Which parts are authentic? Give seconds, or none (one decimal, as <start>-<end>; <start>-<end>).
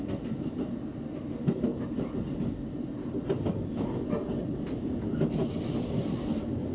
0.0-6.7